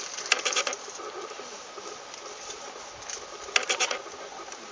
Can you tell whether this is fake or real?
real